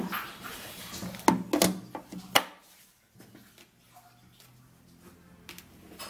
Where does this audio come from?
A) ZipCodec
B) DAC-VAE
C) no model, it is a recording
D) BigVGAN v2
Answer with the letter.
C